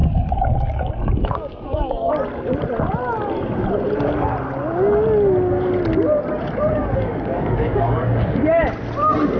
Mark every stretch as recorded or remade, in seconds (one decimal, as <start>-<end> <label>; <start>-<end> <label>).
0.0-2.1 remade; 2.1-6.8 recorded; 6.8-8.4 remade; 8.4-9.4 recorded